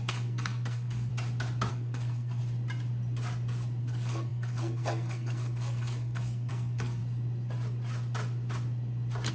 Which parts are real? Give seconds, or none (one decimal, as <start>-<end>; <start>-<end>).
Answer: 1.1-1.7; 2.4-3.8; 7.0-9.3